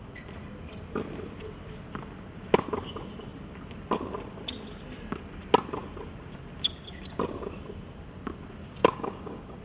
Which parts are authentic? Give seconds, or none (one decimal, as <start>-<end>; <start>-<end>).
0.0-8.8